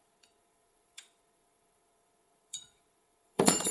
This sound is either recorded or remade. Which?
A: remade